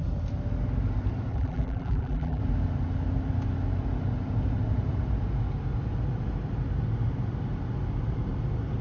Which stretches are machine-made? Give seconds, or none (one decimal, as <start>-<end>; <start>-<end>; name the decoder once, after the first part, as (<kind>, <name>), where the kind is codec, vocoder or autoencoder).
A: 1.3-2.4 (vocoder, BigVGAN v2)